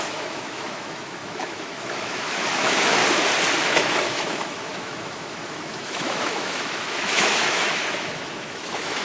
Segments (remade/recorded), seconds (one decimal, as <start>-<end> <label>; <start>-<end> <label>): 0.0-3.0 remade; 3.0-3.7 recorded; 3.7-9.0 remade